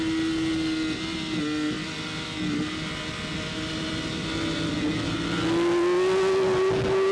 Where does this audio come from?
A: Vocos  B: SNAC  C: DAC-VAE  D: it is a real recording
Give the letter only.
D